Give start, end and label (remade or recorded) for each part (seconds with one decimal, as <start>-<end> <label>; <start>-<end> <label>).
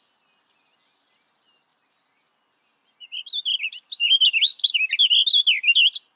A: 0.0-1.7 recorded; 1.7-3.6 remade; 3.6-6.2 recorded